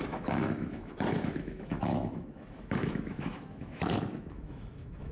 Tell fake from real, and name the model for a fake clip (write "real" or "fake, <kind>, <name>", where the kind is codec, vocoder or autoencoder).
fake, autoencoder, DAC-VAE